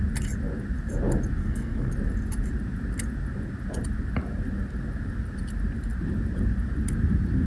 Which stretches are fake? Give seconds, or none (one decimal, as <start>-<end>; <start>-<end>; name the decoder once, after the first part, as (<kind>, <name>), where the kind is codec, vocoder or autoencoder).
1.4-1.9 (codec, SNAC)